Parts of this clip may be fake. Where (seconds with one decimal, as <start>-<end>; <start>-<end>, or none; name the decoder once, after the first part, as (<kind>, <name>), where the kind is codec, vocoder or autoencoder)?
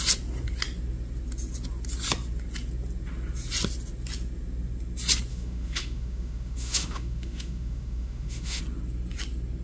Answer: 5.3-8.6 (autoencoder, DAC-VAE)